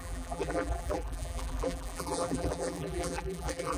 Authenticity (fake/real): fake